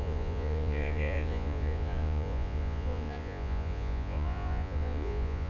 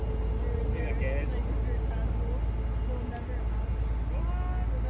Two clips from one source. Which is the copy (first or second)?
first